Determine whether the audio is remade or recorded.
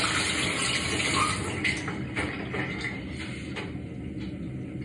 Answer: recorded